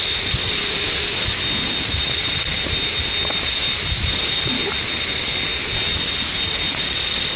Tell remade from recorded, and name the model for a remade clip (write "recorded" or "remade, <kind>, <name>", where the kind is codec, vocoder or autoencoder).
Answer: recorded